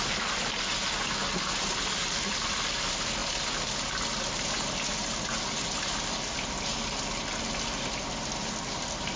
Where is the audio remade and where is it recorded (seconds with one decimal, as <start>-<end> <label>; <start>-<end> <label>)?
0.0-9.2 recorded